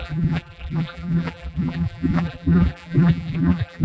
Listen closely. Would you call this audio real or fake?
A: fake